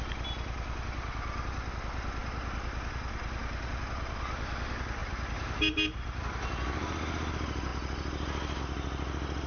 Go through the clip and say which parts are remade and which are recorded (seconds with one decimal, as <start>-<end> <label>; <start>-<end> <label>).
0.0-5.0 recorded; 5.0-6.2 remade; 6.2-9.5 recorded